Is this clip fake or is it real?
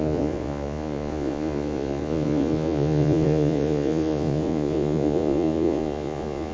fake